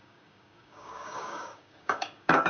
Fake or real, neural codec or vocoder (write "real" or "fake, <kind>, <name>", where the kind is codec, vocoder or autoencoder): fake, codec, DAC